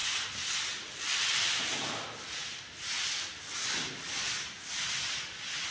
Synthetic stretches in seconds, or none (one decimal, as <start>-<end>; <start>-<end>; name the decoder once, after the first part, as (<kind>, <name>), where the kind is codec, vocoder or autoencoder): none